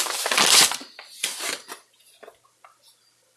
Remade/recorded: recorded